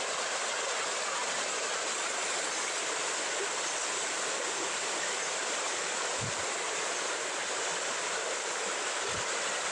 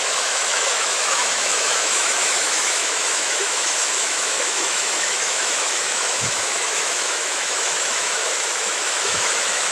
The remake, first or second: second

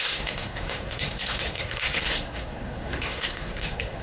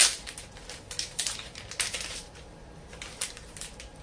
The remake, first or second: first